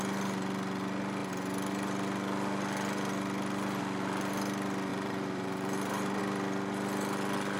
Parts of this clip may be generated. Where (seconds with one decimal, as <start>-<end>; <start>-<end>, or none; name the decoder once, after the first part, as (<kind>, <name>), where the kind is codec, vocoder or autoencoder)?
4.9-6.2 (vocoder, BigVGAN v2)